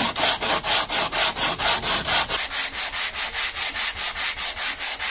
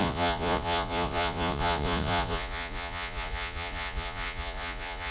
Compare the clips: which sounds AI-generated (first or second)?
second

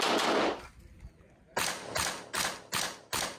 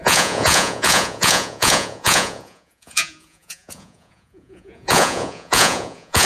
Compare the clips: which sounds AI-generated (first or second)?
second